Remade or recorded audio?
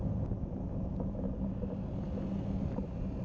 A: recorded